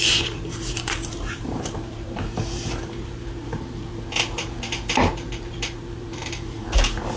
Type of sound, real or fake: fake